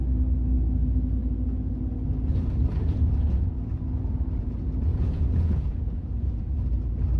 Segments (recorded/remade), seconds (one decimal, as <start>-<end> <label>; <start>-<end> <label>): 0.0-4.9 recorded; 4.9-6.4 remade; 6.4-7.2 recorded